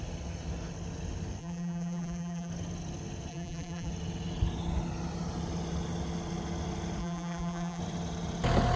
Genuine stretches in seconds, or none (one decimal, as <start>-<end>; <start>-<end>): 0.0-1.4; 2.5-3.3; 3.9-7.0; 7.8-8.8